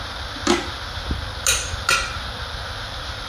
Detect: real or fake real